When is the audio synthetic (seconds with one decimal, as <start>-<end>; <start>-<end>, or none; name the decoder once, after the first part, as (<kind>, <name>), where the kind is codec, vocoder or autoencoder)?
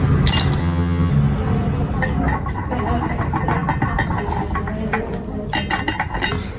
0.6-1.1 (vocoder, HiFi-GAN)